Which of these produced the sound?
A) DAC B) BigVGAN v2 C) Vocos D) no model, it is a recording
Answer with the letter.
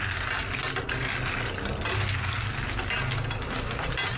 D